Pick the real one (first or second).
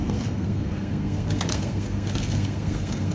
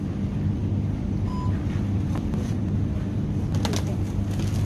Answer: second